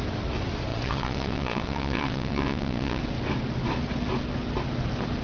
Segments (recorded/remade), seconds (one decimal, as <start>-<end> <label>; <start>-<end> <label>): 0.0-0.7 recorded; 0.7-3.0 remade; 3.0-5.2 recorded